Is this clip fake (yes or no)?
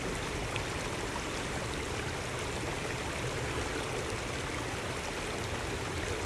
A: no